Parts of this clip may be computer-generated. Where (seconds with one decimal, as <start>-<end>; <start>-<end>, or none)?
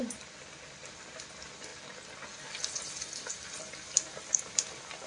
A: 0.8-1.7; 3.3-5.1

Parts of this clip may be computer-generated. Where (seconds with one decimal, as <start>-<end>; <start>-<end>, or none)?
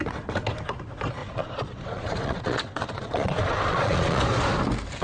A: 1.2-4.2